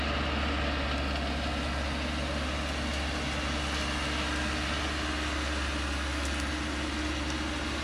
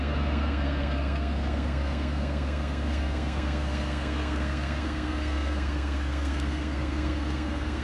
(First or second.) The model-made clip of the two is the second